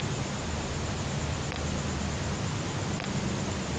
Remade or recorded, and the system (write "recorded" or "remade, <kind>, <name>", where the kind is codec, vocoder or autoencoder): recorded